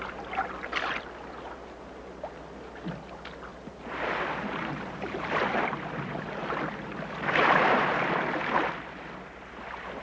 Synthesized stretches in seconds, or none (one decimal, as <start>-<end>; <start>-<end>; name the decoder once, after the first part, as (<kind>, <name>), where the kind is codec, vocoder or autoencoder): 3.5-5.5 (vocoder, BigVGAN v2); 6.4-7.8